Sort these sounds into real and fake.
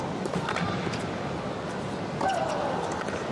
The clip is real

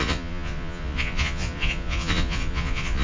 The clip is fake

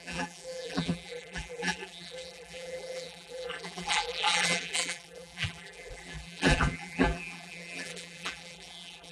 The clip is fake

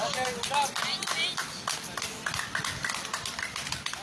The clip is real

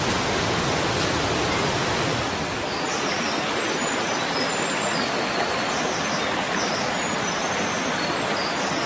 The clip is real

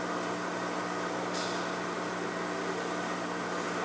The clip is real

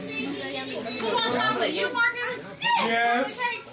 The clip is real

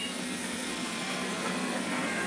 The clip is fake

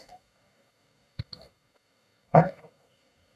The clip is fake